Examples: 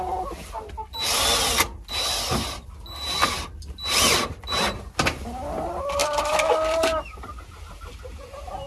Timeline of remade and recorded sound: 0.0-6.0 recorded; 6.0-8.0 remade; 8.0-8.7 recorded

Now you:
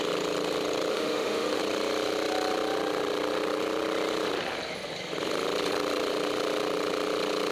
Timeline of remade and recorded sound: 0.0-0.9 recorded; 0.9-1.6 remade; 1.6-7.5 recorded

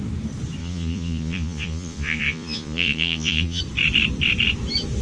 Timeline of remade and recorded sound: 0.0-0.6 recorded; 0.6-3.6 remade; 3.6-5.0 recorded

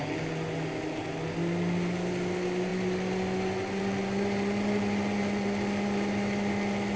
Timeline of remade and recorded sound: 0.0-7.0 recorded

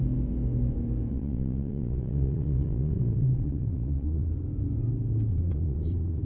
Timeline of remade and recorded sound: 0.0-1.1 recorded; 1.1-4.3 remade; 4.3-5.3 recorded; 5.3-6.2 remade

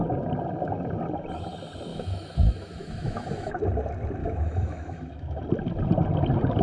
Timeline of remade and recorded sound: 0.0-1.9 recorded; 1.9-3.5 remade; 3.5-4.2 recorded; 4.2-5.4 remade; 5.4-6.6 recorded